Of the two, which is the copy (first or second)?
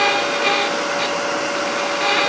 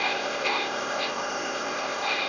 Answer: second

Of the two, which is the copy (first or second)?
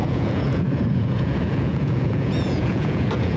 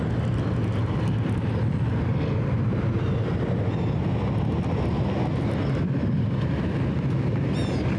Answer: first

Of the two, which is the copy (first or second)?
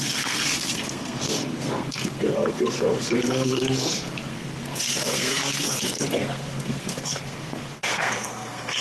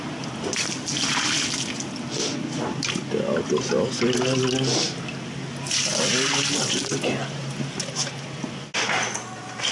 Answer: first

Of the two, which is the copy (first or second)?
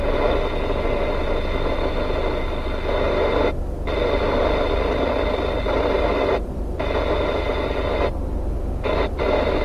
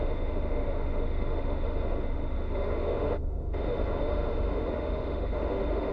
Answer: second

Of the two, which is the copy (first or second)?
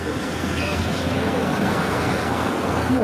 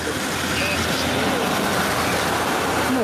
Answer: first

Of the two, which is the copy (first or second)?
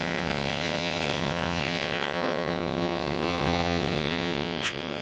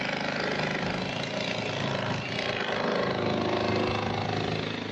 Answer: first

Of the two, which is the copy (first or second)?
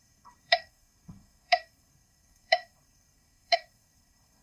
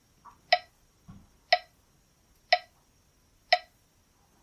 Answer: first